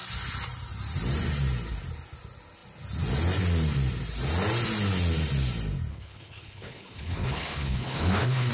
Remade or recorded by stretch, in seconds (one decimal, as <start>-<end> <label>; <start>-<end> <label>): 0.0-5.9 recorded; 5.9-8.5 remade